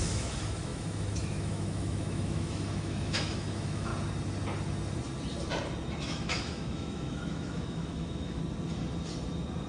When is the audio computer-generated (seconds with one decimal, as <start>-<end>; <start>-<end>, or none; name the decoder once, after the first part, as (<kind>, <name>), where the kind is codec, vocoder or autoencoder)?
0.0-3.9 (autoencoder, DAC-VAE); 6.0-8.4